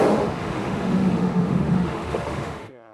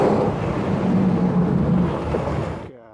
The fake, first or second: first